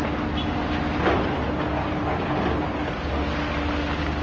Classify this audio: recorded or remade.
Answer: recorded